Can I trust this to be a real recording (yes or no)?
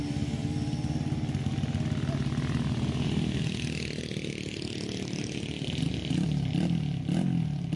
yes